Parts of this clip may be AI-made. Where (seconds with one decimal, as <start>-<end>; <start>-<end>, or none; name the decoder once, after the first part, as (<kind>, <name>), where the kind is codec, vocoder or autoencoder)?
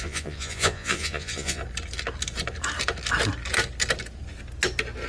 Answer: 0.0-1.6 (vocoder, Vocos)